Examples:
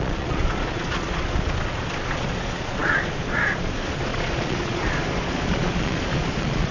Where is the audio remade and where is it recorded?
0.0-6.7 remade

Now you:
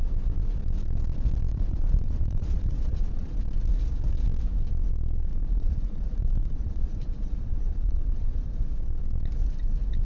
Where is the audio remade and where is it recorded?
0.0-1.5 recorded; 1.5-3.4 remade; 3.4-5.3 recorded; 5.3-8.5 remade; 8.5-10.0 recorded